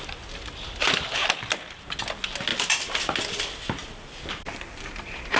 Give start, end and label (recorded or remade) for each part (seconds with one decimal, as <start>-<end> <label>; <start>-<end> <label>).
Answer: 0.0-2.5 recorded; 2.5-3.0 remade; 3.0-3.8 recorded; 3.8-5.4 remade